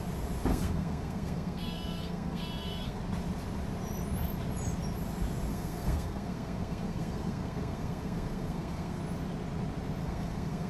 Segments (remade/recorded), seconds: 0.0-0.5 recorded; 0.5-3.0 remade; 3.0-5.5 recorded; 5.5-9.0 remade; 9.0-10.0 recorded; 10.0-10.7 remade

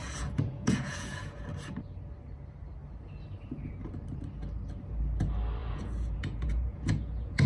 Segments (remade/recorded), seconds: 0.0-1.4 remade; 1.4-5.6 recorded; 5.6-7.5 remade

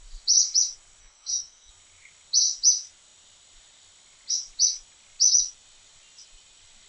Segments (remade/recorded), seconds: 0.0-1.0 recorded; 1.0-1.7 remade; 1.7-6.9 recorded

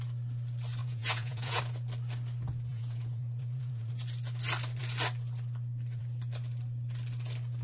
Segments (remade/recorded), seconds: 0.0-0.8 recorded; 0.8-1.6 remade; 1.6-2.7 recorded; 2.7-3.9 remade; 3.9-7.6 recorded

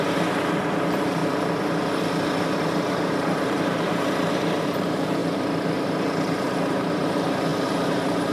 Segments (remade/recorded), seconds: 0.0-1.2 remade; 1.2-2.6 recorded; 2.6-8.3 remade

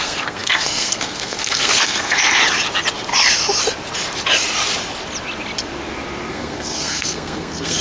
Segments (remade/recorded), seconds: 0.0-2.4 remade; 2.4-6.3 recorded; 6.3-7.8 remade

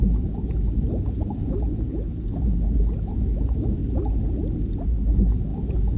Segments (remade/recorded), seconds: 0.0-3.8 remade; 3.8-5.1 recorded; 5.1-6.0 remade